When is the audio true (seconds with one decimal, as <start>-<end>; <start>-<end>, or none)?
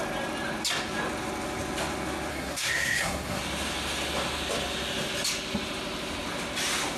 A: 0.0-2.3; 3.4-7.0